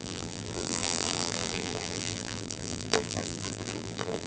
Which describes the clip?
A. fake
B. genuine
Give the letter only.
A